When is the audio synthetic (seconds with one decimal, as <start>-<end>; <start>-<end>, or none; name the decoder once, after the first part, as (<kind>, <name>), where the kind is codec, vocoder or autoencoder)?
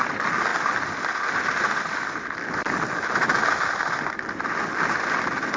none